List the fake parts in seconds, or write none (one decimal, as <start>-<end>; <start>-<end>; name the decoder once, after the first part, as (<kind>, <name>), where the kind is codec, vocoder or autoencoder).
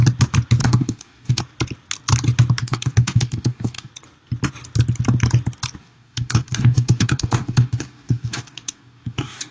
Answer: 0.6-1.4 (codec, DAC); 2.6-3.9; 5.8-9.5